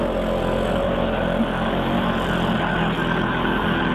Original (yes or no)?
yes